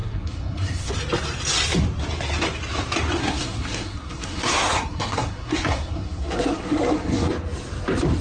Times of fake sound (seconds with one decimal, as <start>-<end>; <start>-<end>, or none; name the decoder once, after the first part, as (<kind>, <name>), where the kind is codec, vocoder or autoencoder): 0.0-0.9 (codec, SNAC); 3.2-7.3

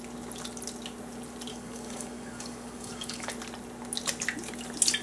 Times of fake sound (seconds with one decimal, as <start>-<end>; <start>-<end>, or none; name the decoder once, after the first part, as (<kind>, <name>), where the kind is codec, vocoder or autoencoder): 1.5-3.3 (codec, DAC)

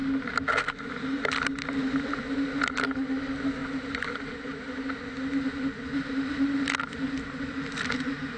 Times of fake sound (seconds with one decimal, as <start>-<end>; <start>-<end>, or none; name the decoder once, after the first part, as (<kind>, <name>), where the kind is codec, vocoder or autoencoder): none

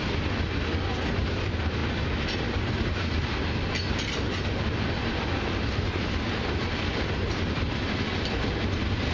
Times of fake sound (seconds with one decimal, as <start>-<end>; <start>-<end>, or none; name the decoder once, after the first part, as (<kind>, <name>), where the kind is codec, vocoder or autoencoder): none

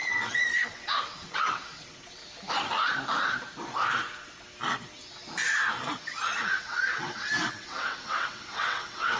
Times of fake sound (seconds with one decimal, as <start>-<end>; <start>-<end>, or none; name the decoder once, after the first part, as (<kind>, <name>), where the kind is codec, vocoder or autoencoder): 0.0-2.2 (vocoder, WaveNeXt); 6.6-9.2